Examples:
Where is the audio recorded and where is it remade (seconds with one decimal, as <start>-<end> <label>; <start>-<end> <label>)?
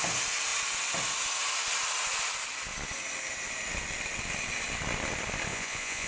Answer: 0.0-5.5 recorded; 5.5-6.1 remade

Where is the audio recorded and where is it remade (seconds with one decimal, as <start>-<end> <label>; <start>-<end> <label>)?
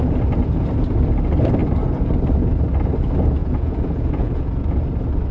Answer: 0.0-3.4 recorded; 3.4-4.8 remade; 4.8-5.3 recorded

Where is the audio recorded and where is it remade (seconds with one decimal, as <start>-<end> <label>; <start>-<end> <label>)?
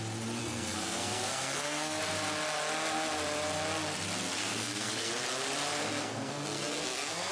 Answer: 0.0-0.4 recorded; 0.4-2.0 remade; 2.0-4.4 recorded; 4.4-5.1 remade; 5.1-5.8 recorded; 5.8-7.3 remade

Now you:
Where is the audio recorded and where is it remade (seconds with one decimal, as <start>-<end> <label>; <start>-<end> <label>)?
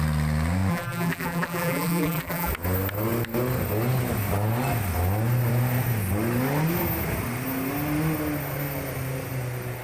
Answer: 0.0-0.7 recorded; 0.7-2.5 remade; 2.5-9.8 recorded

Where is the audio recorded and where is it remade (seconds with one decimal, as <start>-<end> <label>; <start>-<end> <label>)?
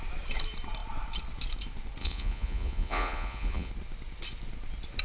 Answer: 0.0-2.0 recorded; 2.0-3.7 remade; 3.7-5.0 recorded